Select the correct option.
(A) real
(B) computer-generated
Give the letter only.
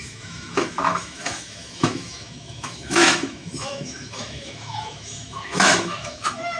B